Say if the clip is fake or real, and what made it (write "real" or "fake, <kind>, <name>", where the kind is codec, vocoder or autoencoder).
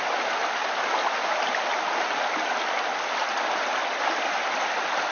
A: real